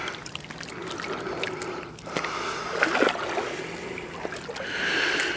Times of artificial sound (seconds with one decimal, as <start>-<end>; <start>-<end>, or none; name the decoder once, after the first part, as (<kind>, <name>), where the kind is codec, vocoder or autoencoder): none